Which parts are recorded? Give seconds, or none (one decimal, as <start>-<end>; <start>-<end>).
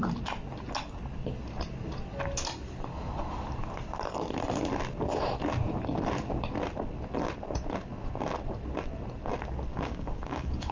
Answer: 0.0-9.7